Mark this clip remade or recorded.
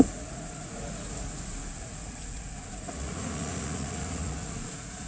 remade